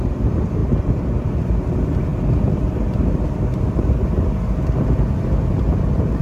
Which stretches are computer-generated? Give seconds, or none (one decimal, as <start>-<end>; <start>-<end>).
0.6-1.4; 2.1-4.1